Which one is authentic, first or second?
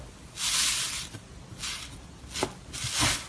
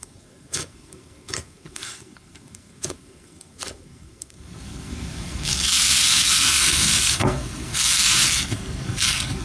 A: first